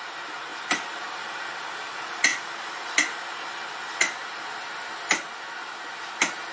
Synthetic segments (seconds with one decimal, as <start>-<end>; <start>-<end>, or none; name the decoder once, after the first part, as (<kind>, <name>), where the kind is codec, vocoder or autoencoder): 0.5-1.4 (vocoder, BigVGAN v2); 2.3-4.0